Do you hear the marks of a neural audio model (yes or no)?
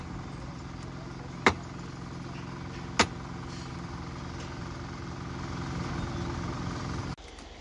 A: no